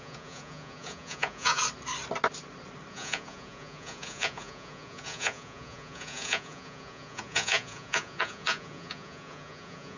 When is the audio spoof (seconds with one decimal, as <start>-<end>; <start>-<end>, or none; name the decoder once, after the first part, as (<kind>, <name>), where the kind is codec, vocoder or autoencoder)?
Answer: 0.0-1.6 (vocoder, Vocos); 2.9-10.0